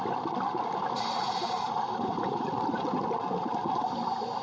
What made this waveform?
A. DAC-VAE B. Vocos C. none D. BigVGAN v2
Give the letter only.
C